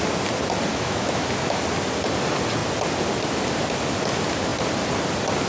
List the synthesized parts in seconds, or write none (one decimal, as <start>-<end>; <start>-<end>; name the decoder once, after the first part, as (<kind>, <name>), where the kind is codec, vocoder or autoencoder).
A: 0.7-1.6 (autoencoder, DAC-VAE)